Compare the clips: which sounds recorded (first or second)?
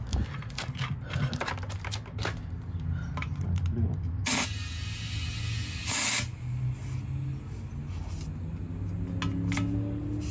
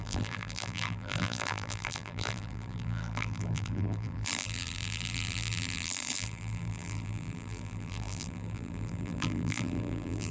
first